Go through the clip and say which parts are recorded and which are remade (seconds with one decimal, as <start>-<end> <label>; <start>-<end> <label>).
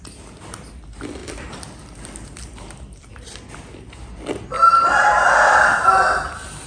0.0-1.2 recorded; 1.2-3.1 remade; 3.1-6.7 recorded